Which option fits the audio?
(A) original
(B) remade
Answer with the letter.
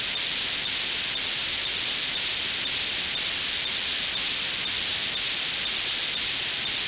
A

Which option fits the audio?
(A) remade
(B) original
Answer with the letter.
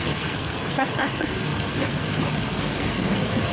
A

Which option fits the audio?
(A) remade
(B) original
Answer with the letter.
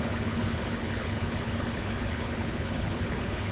A